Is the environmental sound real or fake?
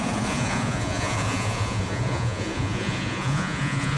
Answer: fake